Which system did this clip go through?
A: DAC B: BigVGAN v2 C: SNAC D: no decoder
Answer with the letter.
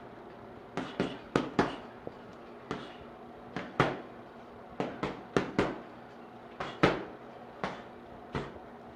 D